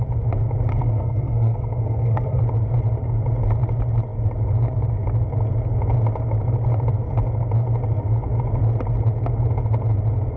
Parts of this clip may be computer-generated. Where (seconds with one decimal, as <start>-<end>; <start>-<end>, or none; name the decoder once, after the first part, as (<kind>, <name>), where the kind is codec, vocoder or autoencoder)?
0.7-2.4 (codec, SNAC)